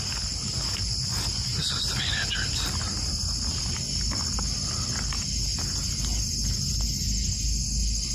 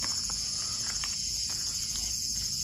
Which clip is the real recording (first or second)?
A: first